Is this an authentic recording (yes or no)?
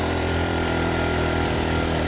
no